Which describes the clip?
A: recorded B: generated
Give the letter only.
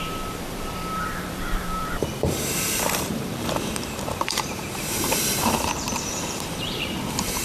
B